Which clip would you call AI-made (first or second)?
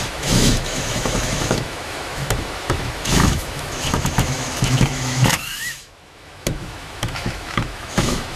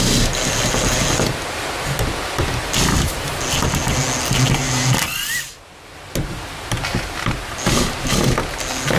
first